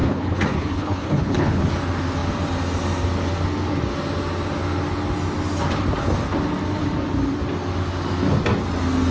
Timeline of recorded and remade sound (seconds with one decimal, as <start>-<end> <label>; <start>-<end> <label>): 0.0-1.7 remade; 1.7-9.1 recorded